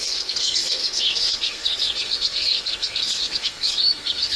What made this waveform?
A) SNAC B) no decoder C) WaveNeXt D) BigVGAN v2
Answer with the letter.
A